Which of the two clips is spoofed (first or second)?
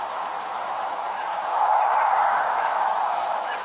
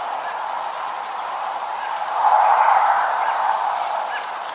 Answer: first